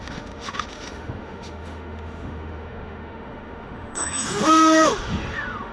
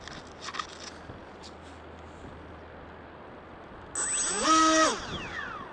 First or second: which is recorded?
second